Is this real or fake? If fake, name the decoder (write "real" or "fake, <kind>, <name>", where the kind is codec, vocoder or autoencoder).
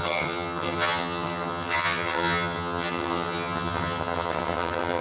fake, vocoder, HiFi-GAN